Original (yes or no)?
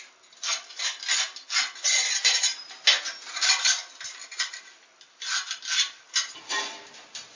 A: yes